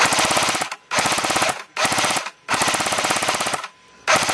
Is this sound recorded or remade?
recorded